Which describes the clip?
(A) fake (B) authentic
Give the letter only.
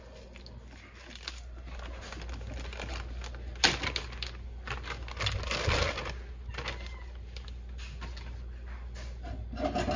B